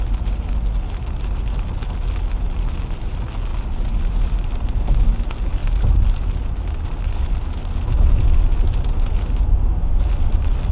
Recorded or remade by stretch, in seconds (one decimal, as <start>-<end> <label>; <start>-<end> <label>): 0.0-10.7 recorded